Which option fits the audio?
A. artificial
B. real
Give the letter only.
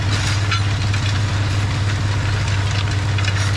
B